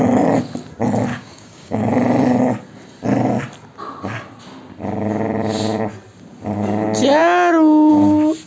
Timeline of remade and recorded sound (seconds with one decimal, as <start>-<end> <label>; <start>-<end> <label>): 0.0-1.1 recorded; 1.1-1.9 remade; 1.9-8.5 recorded